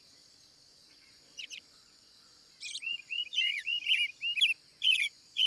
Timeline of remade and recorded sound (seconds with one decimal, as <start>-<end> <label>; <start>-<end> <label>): 0.0-0.7 recorded; 0.7-4.0 remade; 4.0-4.7 recorded; 4.7-5.5 remade